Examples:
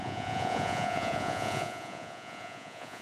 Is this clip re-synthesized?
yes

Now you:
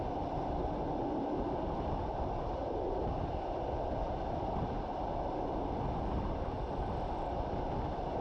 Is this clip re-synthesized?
no